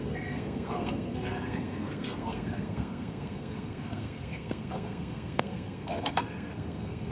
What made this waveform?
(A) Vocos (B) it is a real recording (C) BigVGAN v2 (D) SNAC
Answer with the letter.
D